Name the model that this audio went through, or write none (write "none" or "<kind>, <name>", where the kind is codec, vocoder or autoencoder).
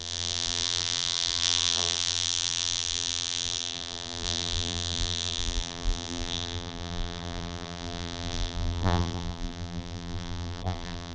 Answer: vocoder, BigVGAN v2